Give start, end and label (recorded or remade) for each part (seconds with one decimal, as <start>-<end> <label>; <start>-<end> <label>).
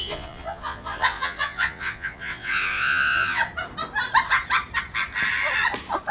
0.0-3.4 remade; 3.4-6.1 recorded